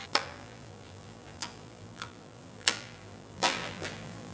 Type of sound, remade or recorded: remade